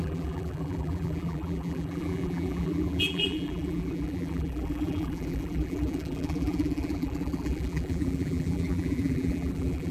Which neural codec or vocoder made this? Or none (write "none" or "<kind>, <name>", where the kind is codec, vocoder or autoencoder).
vocoder, BigVGAN v2